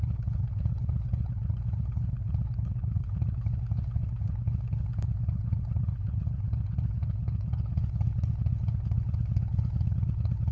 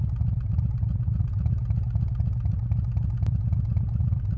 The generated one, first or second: first